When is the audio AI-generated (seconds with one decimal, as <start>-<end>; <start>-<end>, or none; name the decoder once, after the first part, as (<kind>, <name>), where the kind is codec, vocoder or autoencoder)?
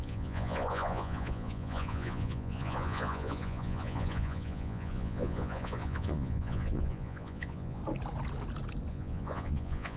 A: 0.0-7.8 (vocoder, Vocos); 8.9-10.0